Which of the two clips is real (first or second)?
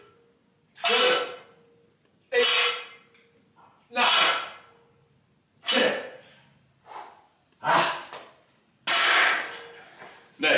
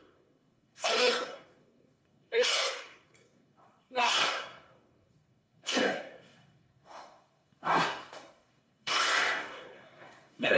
first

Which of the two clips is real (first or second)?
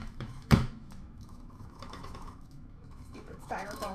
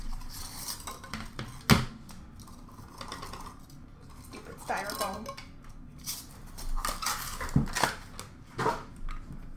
second